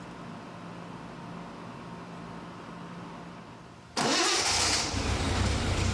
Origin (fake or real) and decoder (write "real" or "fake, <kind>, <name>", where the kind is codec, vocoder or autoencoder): real